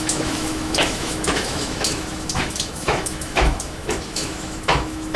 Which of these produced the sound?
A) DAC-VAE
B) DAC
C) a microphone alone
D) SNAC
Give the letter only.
A